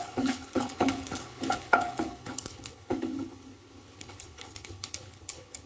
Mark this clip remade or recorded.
remade